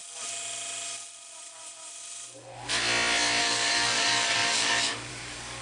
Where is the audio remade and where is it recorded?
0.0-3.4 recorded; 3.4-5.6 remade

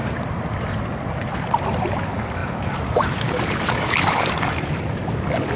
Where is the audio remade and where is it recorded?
0.0-2.0 recorded; 2.0-5.6 remade

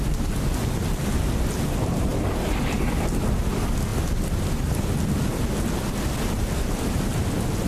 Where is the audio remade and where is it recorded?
0.0-7.7 recorded

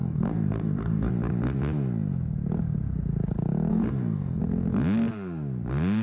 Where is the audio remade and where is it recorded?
0.0-1.1 remade; 1.1-3.7 recorded; 3.7-4.4 remade; 4.4-6.0 recorded

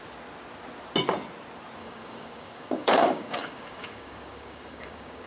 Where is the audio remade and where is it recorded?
0.0-1.8 recorded; 1.8-5.3 remade